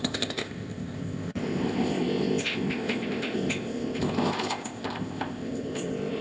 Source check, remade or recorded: remade